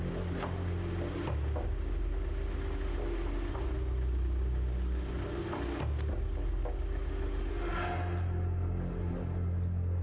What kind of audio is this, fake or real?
real